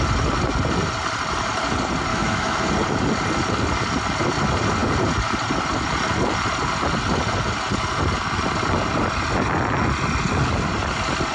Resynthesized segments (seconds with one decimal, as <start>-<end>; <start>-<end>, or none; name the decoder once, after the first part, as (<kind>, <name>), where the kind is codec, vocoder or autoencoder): 2.1-2.7 (autoencoder, DAC-VAE)